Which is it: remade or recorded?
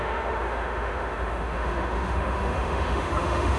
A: remade